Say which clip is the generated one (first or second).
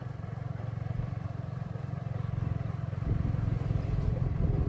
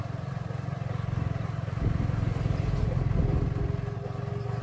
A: first